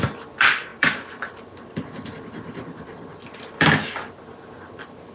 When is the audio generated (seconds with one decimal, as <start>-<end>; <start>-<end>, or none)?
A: 0.7-1.3